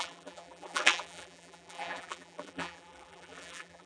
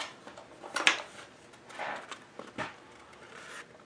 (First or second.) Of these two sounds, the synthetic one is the first